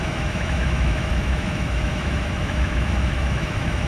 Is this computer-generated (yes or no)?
yes